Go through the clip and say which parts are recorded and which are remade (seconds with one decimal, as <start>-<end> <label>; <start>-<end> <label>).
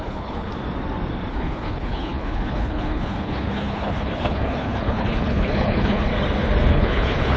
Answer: 0.0-0.5 remade; 0.5-1.3 recorded; 1.3-6.1 remade; 6.1-6.7 recorded; 6.7-7.4 remade